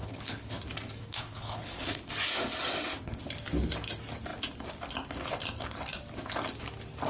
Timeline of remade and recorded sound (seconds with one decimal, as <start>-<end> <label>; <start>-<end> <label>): 0.0-0.6 remade; 0.6-1.0 recorded; 1.0-2.1 remade; 2.1-7.1 recorded